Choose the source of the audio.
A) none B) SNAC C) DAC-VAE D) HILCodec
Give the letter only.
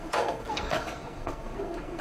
B